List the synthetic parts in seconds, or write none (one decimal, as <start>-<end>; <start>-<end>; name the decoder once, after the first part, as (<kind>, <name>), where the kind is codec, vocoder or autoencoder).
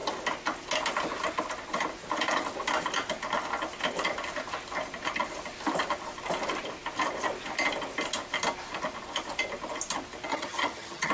10.3-11.1 (vocoder, HiFi-GAN)